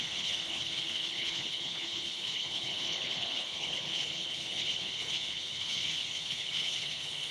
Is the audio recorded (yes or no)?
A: no